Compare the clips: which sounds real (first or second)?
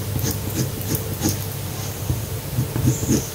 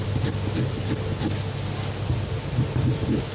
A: second